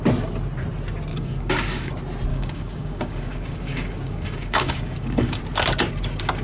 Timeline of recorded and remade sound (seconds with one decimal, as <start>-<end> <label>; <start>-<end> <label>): 0.0-1.1 recorded; 1.1-1.9 remade; 1.9-2.3 recorded; 2.3-5.4 remade; 5.4-6.4 recorded